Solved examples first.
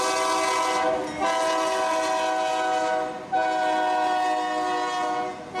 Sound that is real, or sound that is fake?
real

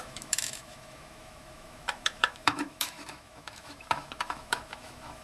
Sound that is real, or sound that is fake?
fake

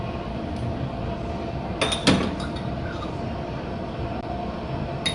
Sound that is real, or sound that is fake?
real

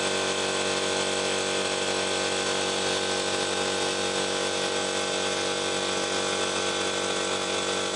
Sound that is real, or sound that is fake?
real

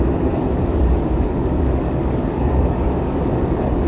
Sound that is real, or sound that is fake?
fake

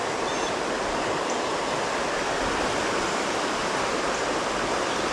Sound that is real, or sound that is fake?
real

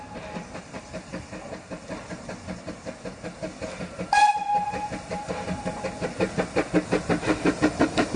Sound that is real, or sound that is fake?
real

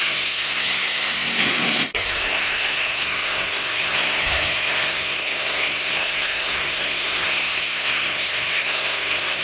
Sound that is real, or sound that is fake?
fake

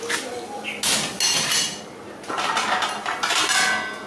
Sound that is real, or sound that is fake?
real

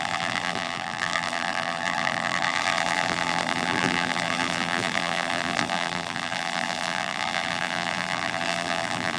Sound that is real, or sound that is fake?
fake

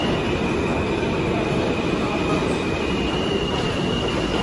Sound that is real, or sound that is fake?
real